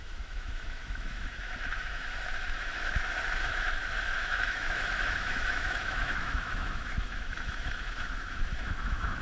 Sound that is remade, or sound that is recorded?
remade